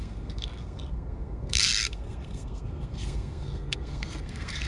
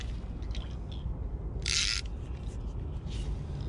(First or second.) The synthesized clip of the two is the first